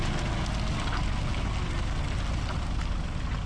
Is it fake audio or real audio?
real